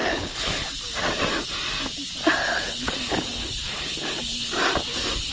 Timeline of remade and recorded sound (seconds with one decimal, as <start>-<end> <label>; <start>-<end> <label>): 0.0-0.7 remade; 0.7-2.4 recorded; 2.4-4.5 remade; 4.5-5.3 recorded